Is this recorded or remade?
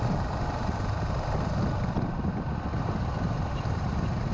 recorded